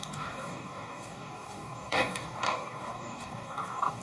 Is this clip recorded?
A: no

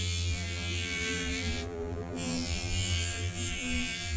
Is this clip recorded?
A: no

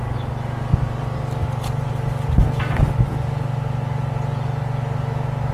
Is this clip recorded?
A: yes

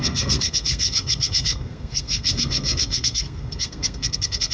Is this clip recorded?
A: no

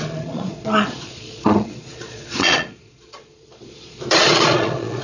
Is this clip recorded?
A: no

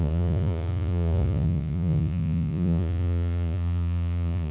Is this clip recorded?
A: no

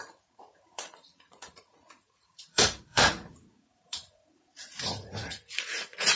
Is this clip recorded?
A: no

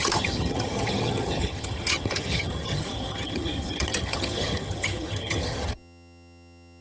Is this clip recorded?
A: no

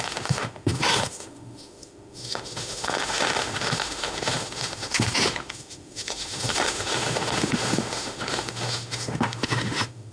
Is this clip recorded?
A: no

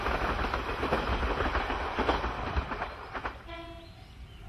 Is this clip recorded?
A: yes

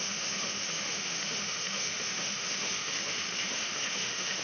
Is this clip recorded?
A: no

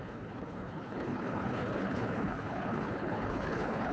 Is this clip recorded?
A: no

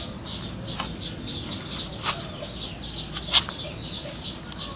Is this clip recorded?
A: yes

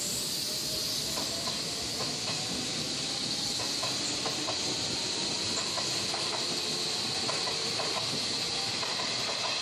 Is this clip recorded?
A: yes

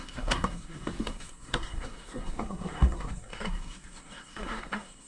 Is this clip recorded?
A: no